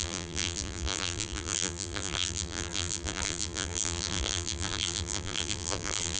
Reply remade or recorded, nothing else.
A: remade